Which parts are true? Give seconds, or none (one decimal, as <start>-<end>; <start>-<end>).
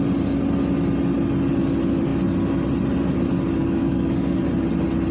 0.0-3.6; 4.4-5.1